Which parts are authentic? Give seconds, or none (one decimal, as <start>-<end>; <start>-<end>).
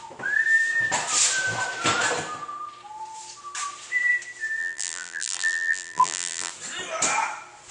0.0-4.6; 6.5-7.7